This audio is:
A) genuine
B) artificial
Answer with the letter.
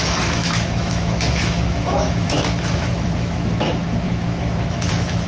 B